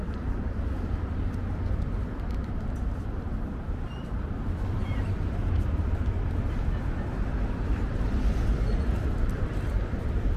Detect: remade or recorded remade